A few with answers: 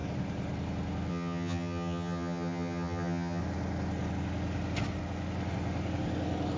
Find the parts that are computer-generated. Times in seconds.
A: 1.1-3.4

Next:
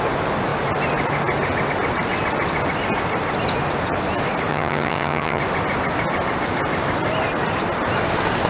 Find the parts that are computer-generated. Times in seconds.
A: 4.5-5.4

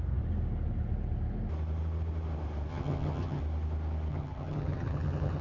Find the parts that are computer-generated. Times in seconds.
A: 2.7-3.4; 4.1-5.4

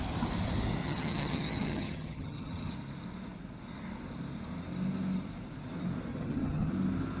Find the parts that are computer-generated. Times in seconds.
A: 0.8-2.7; 6.1-6.7

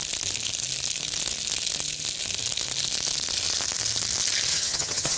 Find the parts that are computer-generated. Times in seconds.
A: 4.5-5.2

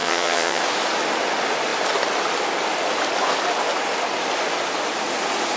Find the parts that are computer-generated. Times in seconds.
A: 0.0-0.6

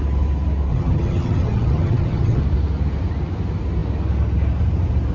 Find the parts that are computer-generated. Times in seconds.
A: 0.7-2.4

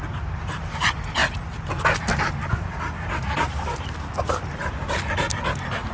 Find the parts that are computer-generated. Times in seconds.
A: none